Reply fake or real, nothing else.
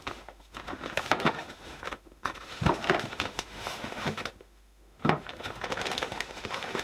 fake